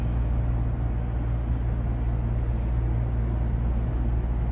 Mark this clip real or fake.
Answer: real